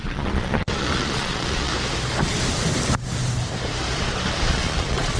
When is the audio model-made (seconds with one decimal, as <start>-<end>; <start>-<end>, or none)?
0.0-1.7; 4.5-5.2